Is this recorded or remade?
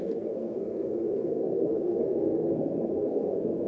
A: remade